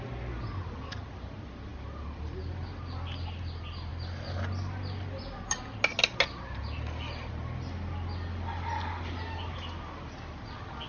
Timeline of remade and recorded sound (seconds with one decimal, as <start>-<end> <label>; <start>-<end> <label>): 0.0-10.9 recorded